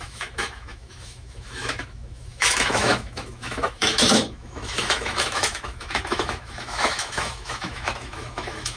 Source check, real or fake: fake